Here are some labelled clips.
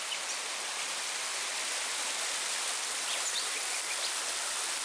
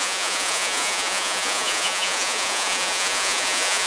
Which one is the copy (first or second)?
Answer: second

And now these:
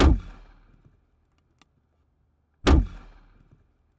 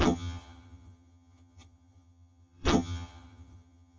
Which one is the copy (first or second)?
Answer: second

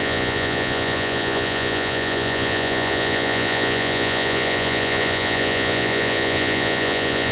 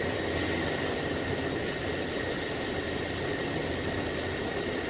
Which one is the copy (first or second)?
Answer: first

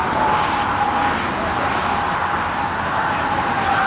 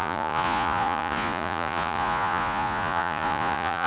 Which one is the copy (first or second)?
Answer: second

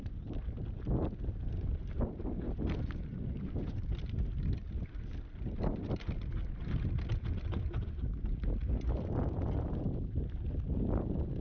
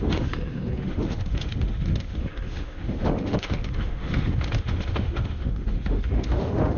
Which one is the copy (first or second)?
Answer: second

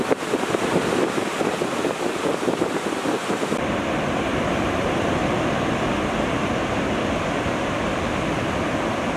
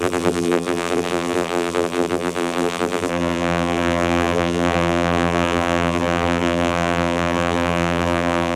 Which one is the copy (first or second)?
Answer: second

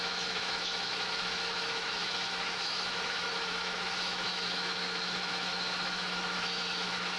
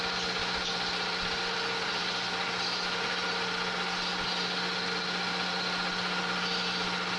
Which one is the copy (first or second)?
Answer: first